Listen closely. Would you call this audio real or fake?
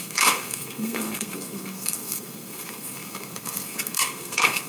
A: fake